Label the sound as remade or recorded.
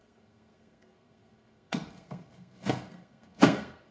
remade